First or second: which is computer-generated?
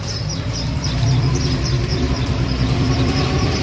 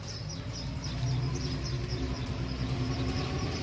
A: first